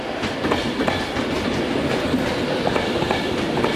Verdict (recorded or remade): recorded